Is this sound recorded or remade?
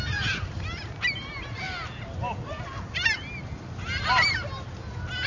recorded